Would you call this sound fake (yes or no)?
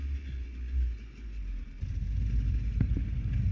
no